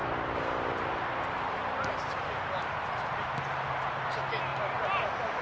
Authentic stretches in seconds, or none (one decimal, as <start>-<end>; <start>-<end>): 0.0-5.4